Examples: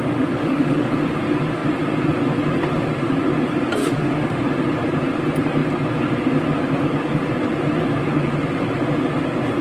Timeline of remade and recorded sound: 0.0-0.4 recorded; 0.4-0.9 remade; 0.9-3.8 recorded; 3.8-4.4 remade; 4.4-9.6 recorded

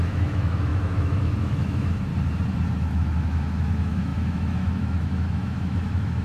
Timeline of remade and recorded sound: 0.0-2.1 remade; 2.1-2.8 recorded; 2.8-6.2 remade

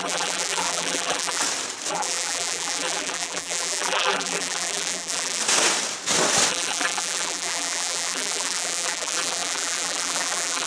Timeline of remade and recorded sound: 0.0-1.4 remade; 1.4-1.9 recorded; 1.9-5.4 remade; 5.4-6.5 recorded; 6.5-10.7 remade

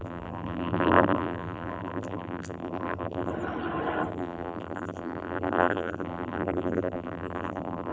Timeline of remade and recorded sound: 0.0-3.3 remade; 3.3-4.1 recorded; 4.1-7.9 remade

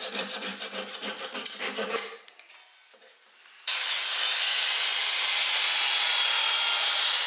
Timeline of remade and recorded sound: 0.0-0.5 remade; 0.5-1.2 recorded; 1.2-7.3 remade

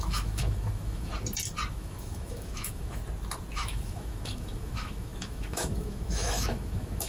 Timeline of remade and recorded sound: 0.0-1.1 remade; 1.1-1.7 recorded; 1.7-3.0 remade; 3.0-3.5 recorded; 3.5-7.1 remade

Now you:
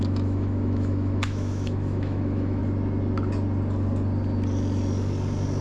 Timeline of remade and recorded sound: 0.0-2.6 remade; 2.6-5.6 recorded

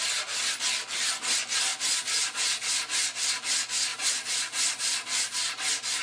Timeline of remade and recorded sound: 0.0-1.7 recorded; 1.7-2.7 remade; 2.7-3.9 recorded; 3.9-5.5 remade; 5.5-6.0 recorded